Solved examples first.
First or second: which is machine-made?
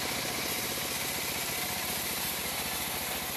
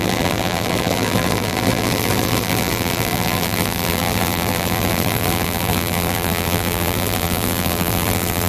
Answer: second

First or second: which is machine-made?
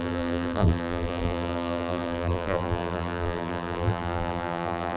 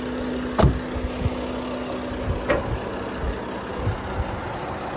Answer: first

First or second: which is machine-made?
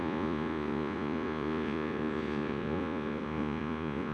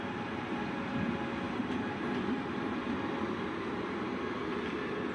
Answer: first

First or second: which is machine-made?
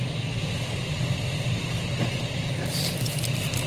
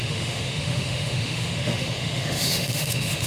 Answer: second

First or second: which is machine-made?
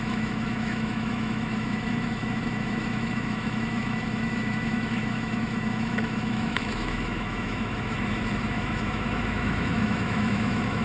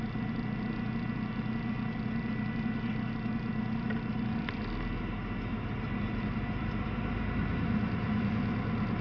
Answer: first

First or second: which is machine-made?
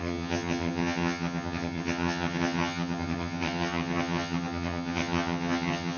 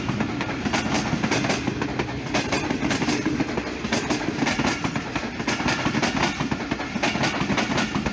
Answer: first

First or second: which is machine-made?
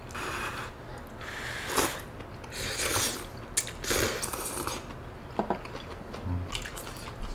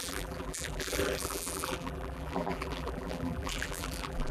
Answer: second